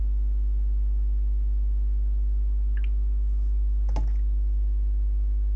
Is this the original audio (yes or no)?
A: yes